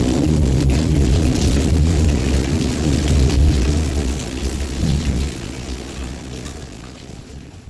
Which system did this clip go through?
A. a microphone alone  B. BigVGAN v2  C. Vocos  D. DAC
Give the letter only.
C